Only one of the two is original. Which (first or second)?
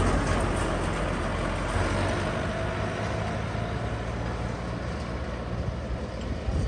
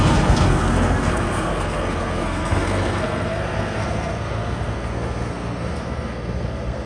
first